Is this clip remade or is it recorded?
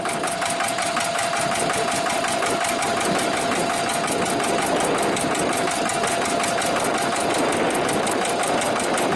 recorded